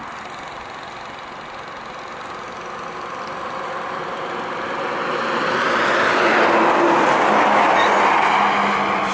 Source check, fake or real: real